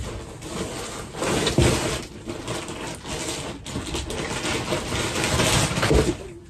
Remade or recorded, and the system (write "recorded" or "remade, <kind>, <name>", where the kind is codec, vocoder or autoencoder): recorded